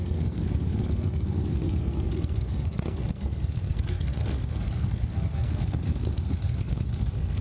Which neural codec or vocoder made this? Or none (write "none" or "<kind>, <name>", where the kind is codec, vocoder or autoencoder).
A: codec, SNAC